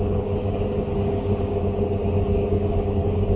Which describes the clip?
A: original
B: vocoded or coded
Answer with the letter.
B